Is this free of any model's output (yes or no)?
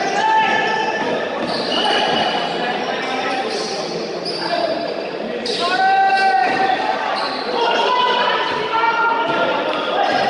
yes